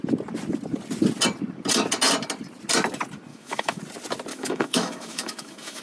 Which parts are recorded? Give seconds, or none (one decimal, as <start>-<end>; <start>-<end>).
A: 0.0-3.3; 3.8-4.3